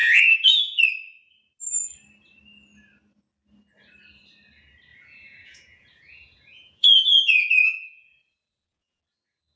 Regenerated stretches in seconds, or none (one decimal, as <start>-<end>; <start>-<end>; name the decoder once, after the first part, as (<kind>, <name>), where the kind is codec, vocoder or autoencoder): 0.0-0.8 (vocoder, Vocos); 4.9-9.0